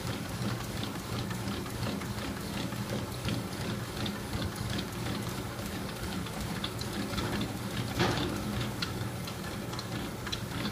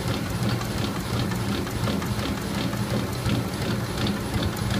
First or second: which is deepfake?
first